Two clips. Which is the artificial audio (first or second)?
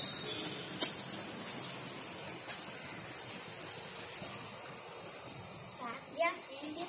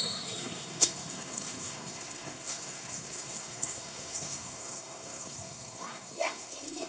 second